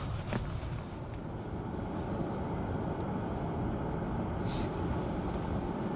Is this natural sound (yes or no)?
yes